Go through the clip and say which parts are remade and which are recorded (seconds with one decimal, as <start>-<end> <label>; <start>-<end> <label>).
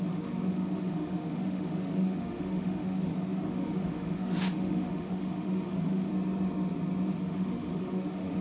0.0-6.1 remade; 6.1-7.1 recorded; 7.1-8.4 remade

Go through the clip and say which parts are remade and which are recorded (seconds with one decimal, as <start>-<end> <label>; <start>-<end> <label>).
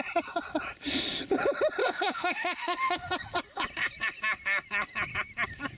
0.0-1.8 recorded; 1.8-3.1 remade; 3.1-5.8 recorded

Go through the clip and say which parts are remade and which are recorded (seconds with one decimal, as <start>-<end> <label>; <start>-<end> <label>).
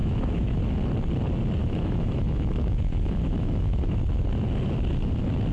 0.0-0.6 remade; 0.6-1.6 recorded; 1.6-3.9 remade; 3.9-5.5 recorded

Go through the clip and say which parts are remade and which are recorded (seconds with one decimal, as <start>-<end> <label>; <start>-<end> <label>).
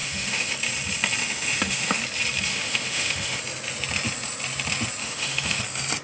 0.0-0.5 remade; 0.5-1.2 recorded; 1.2-2.0 remade; 2.0-2.5 recorded; 2.5-3.4 remade; 3.4-5.0 recorded; 5.0-5.6 remade; 5.6-6.0 recorded